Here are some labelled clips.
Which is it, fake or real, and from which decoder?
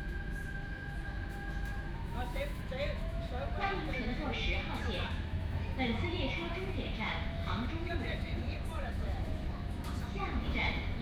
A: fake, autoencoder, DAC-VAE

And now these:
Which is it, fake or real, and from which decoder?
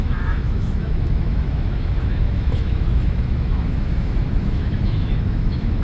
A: fake, autoencoder, DAC-VAE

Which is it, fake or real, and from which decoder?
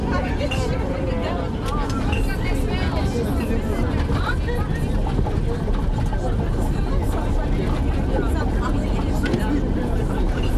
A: real